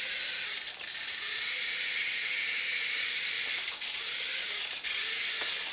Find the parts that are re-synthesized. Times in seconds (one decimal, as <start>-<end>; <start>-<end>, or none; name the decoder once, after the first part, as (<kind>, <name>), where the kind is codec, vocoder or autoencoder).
2.7-4.7 (vocoder, BigVGAN v2)